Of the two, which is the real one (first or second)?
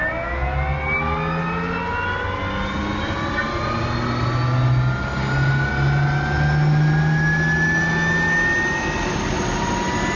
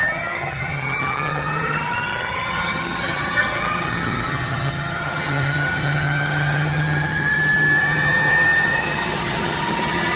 first